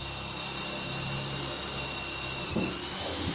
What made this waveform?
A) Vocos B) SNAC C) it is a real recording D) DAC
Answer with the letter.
C